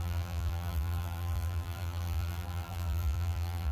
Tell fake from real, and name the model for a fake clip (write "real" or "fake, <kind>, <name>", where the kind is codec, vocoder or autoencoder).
fake, vocoder, BigVGAN v2